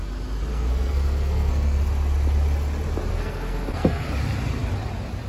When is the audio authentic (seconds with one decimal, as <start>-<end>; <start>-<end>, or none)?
0.0-0.5; 1.8-3.1; 4.1-5.3